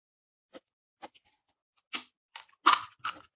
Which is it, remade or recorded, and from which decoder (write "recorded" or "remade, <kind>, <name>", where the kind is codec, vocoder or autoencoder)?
recorded